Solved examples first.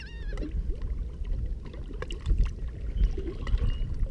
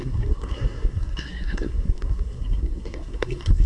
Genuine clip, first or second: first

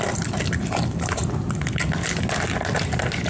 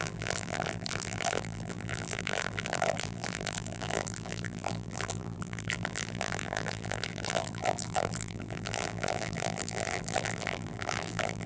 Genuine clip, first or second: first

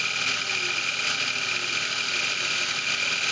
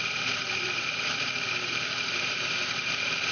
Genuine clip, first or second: first